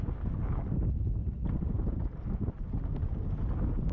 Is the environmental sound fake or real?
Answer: real